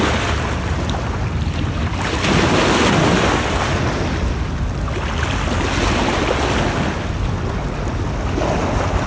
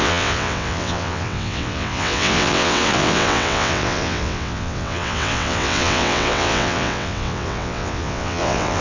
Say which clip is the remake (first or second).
second